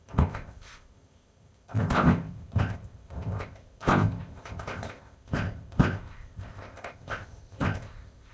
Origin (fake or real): fake